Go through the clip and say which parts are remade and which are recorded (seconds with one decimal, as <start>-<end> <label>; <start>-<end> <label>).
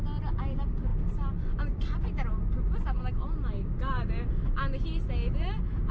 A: 0.0-5.9 recorded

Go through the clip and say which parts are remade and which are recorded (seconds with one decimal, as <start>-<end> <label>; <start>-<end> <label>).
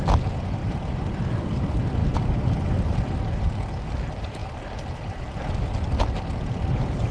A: 0.0-7.1 recorded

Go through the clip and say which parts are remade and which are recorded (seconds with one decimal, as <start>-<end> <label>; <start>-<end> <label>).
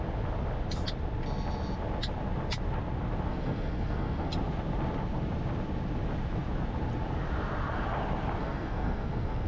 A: 0.0-3.3 recorded; 3.3-4.3 remade; 4.3-8.4 recorded; 8.4-9.5 remade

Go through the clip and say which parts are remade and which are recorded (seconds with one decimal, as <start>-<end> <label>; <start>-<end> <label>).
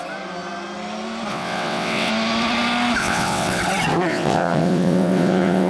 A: 0.0-1.3 recorded; 1.3-2.1 remade; 2.1-3.0 recorded; 3.0-3.6 remade; 3.6-4.1 recorded; 4.1-5.7 remade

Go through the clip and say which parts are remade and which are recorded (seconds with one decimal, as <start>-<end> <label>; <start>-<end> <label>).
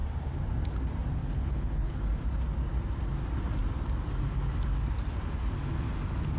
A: 0.0-1.2 recorded; 1.2-2.0 remade; 2.0-6.4 recorded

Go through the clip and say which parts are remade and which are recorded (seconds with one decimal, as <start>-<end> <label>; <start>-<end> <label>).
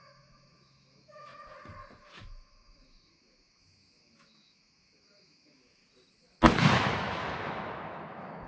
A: 0.0-1.3 remade; 1.3-2.0 recorded; 2.0-5.8 remade; 5.8-6.6 recorded; 6.6-8.5 remade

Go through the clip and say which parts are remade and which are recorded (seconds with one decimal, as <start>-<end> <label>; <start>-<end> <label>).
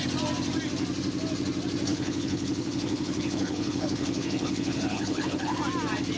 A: 0.0-1.9 recorded; 1.9-5.6 remade; 5.6-6.2 recorded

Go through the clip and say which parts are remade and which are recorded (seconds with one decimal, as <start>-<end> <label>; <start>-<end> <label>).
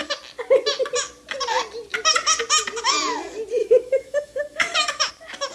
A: 0.0-3.6 recorded; 3.6-5.1 remade; 5.1-5.5 recorded